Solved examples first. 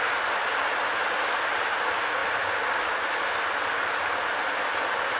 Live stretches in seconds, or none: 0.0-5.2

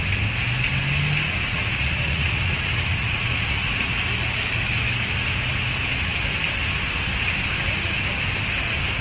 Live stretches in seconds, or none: 0.0-1.5; 3.9-9.0

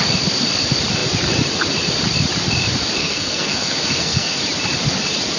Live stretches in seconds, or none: 0.0-3.0; 4.4-5.4

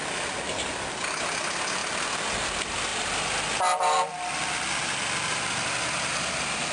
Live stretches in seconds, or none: 0.0-6.7

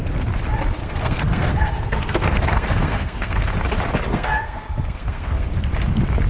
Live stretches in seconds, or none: 0.0-0.8; 3.5-4.1; 5.5-6.3